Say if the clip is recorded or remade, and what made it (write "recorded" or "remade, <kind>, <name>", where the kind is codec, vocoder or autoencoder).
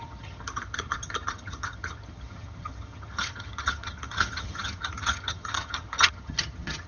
remade, vocoder, HiFi-GAN